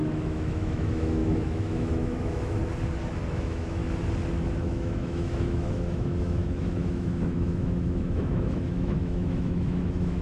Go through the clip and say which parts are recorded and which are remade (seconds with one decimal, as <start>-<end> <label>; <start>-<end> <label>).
0.0-2.6 remade; 2.6-3.3 recorded; 3.3-3.8 remade; 3.8-4.5 recorded; 4.5-10.2 remade